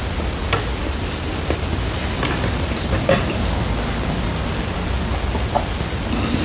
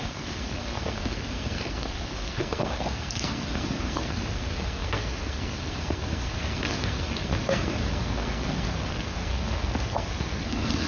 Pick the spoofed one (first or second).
second